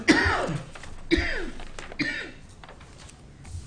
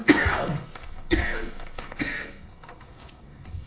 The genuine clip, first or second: first